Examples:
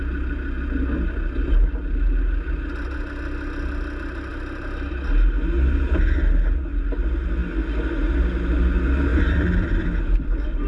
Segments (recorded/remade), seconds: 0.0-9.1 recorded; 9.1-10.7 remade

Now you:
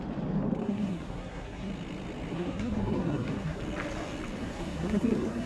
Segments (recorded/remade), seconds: 0.0-0.6 recorded; 0.6-1.7 remade; 1.7-2.3 recorded; 2.3-3.6 remade; 3.6-4.4 recorded; 4.4-5.5 remade

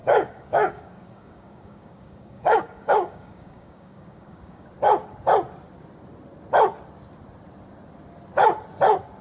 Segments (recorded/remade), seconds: 0.0-4.7 remade; 4.7-9.2 recorded

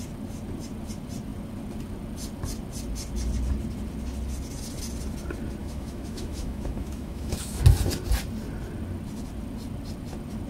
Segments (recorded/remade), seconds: 0.0-5.6 recorded; 5.6-7.6 remade; 7.6-10.5 recorded

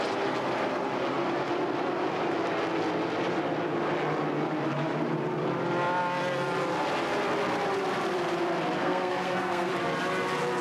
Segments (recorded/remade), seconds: 0.0-8.8 recorded; 8.8-9.7 remade; 9.7-10.6 recorded